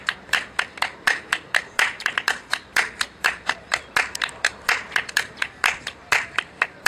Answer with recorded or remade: remade